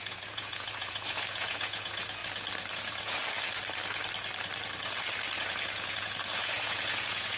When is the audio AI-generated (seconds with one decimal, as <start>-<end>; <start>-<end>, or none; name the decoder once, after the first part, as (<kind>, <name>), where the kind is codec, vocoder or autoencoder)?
0.0-2.2 (vocoder, Vocos); 2.7-3.2; 5.4-7.4